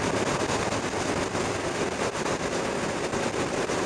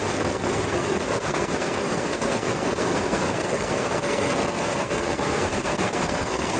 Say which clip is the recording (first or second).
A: first